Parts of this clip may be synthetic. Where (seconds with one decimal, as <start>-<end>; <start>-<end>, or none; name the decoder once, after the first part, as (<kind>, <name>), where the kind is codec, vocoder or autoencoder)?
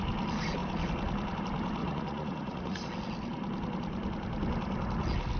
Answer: 1.8-2.8 (vocoder, Vocos)